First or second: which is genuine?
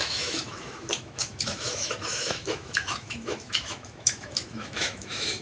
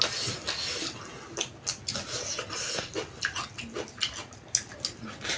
second